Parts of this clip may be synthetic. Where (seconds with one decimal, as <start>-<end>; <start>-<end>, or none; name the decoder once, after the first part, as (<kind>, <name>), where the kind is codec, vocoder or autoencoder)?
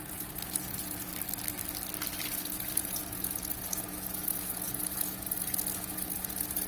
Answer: 0.0-1.1 (vocoder, Vocos); 2.3-6.7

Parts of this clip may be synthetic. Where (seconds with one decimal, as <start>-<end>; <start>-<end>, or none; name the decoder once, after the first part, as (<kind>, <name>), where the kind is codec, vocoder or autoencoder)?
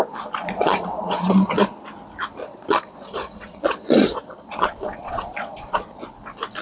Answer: 0.4-1.7 (vocoder, Vocos); 2.4-6.0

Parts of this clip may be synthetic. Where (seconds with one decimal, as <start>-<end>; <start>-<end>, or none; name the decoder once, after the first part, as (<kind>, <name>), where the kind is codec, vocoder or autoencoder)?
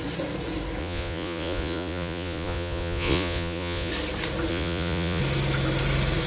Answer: 0.8-3.9 (vocoder, Vocos); 4.5-5.2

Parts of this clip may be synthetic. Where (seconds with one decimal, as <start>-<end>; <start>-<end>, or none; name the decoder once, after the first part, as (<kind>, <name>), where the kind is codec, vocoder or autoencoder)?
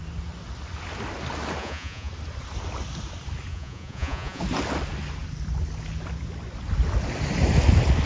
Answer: 1.6-2.1 (vocoder, Vocos); 3.5-4.4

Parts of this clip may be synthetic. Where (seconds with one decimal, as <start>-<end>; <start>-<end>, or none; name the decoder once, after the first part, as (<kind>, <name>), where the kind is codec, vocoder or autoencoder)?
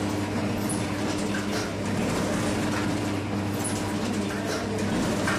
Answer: none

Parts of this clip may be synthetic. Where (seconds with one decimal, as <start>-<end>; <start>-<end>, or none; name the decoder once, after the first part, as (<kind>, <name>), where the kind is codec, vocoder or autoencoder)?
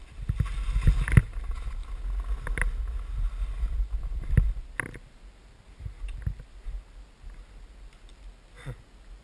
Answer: none